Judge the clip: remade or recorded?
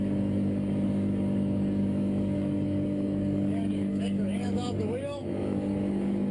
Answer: remade